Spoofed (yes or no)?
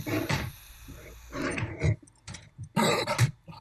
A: no